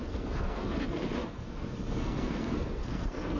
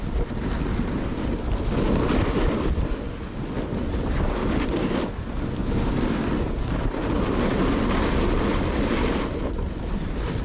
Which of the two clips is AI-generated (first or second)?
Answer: first